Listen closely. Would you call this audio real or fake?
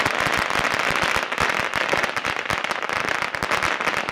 real